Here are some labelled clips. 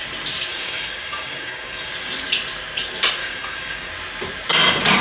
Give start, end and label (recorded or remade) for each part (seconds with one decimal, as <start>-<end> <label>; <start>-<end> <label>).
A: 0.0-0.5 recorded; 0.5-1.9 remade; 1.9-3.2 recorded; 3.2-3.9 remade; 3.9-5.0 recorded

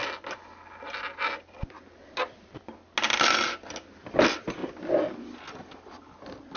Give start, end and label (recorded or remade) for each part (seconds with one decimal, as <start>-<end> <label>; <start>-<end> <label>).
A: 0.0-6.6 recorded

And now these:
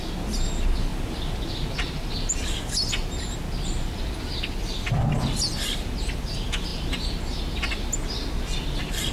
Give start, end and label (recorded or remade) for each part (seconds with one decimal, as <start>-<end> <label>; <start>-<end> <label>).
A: 0.0-9.1 recorded

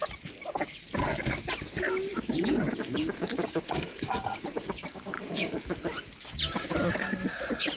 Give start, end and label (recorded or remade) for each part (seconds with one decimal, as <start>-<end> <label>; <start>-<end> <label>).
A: 0.0-2.1 recorded; 2.1-5.6 remade; 5.6-7.8 recorded

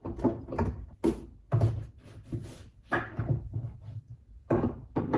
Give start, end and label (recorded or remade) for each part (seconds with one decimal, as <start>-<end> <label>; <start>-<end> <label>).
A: 0.0-1.8 recorded; 1.8-5.2 remade

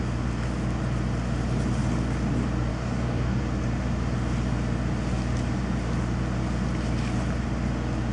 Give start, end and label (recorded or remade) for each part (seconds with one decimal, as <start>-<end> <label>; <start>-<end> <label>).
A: 0.0-2.7 recorded; 2.7-3.4 remade; 3.4-8.1 recorded